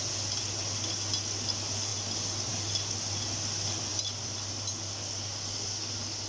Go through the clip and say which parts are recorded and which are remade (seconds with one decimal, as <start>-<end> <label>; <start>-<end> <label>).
0.0-1.9 recorded; 1.9-2.5 remade; 2.5-3.9 recorded; 3.9-4.5 remade; 4.5-6.3 recorded